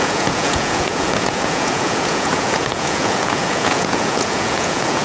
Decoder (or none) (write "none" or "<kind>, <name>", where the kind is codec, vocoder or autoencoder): vocoder, Vocos